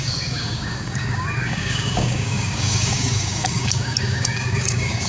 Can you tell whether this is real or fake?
fake